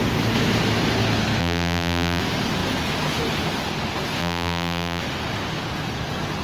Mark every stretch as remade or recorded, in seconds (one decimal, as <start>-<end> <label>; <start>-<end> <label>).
0.0-1.4 recorded; 1.4-2.2 remade; 2.2-4.2 recorded; 4.2-5.0 remade; 5.0-6.4 recorded